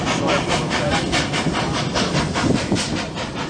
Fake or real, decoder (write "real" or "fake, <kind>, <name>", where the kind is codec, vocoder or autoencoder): fake, vocoder, BigVGAN v2